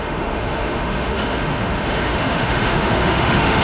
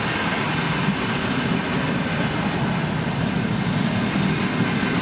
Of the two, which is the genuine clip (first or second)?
second